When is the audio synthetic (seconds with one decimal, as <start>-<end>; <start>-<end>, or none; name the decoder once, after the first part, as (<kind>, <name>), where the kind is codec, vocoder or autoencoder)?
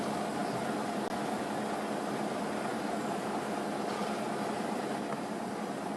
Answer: 2.7-6.0 (vocoder, BigVGAN v2)